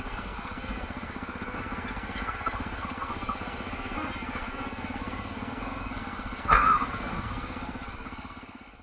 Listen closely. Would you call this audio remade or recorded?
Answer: remade